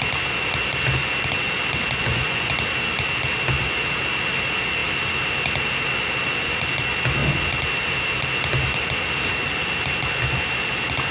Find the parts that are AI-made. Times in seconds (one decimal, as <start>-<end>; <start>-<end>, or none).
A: 2.0-2.5